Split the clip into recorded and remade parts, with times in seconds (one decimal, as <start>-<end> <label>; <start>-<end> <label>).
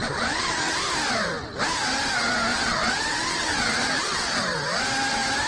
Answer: 0.0-0.8 remade; 0.8-2.5 recorded; 2.5-4.8 remade; 4.8-5.5 recorded